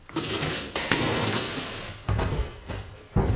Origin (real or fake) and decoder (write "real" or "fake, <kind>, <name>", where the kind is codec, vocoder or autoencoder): fake, codec, SNAC